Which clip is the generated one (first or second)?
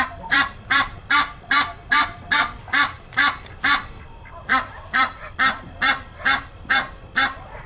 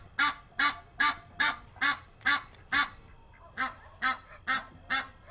first